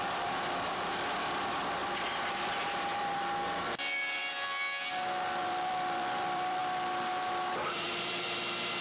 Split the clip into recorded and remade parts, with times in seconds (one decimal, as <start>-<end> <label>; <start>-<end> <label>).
0.0-4.2 remade; 4.2-5.4 recorded; 5.4-6.6 remade; 6.6-7.5 recorded; 7.5-8.8 remade